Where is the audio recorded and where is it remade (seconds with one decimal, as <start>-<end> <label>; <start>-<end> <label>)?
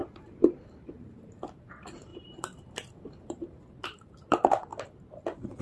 0.0-4.7 remade; 4.7-5.6 recorded